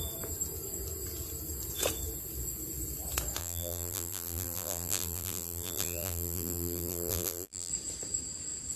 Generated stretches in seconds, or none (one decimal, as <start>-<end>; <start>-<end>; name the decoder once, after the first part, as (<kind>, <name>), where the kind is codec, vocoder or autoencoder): 3.4-7.7 (vocoder, BigVGAN v2)